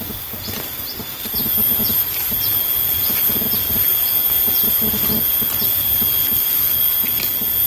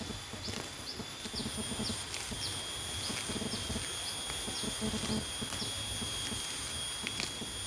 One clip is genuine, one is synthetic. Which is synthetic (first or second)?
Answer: first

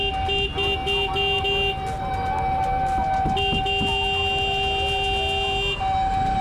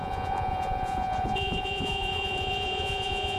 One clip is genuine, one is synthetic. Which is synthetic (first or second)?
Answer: second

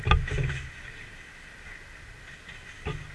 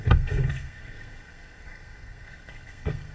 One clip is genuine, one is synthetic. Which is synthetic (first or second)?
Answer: second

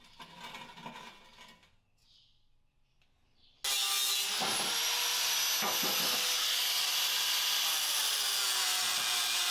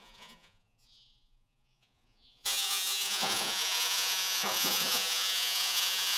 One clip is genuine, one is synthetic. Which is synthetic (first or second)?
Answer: second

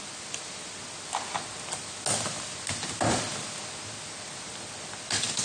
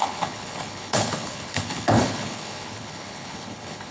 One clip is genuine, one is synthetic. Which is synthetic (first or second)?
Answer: second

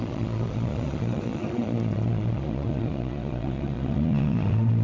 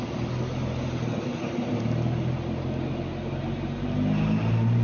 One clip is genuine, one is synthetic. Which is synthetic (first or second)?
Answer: first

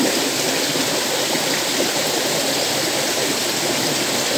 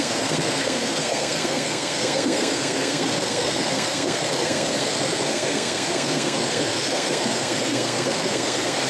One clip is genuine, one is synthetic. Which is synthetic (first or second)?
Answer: second